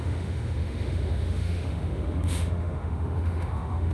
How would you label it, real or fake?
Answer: fake